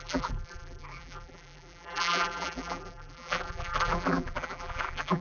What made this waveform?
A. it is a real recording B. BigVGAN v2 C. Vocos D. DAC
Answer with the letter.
B